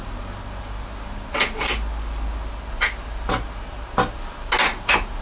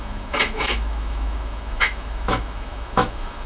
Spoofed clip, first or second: second